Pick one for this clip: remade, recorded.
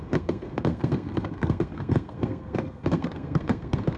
remade